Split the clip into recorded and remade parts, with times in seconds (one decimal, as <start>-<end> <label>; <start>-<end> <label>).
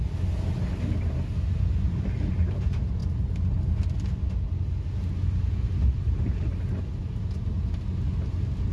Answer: 0.0-8.7 recorded